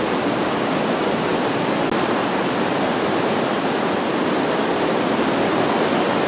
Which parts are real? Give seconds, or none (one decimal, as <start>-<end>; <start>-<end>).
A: 0.0-6.3